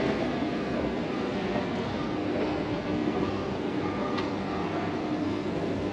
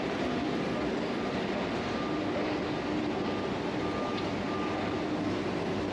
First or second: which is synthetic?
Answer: first